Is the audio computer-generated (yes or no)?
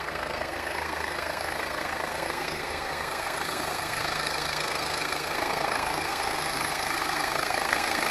yes